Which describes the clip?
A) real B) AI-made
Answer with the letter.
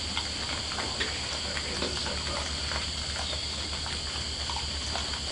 A